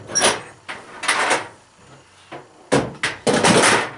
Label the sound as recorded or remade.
recorded